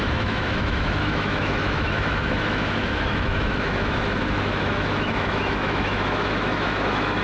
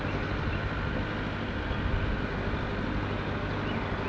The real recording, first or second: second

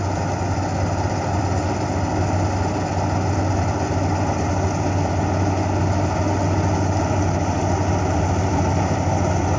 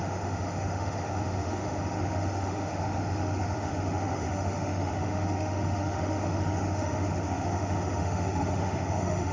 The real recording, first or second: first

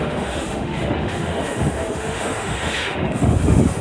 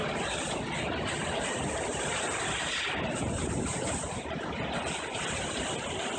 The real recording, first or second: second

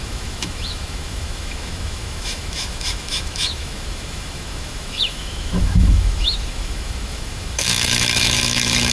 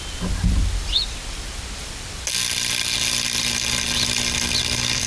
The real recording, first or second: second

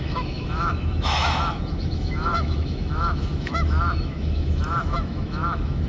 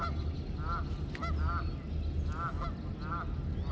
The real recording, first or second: second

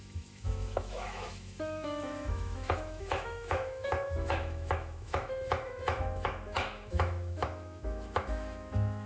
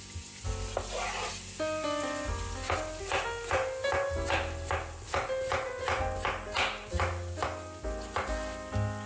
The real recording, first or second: second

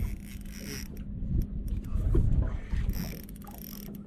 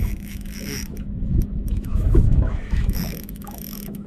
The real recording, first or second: first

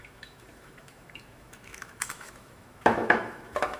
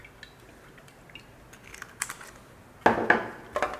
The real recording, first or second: second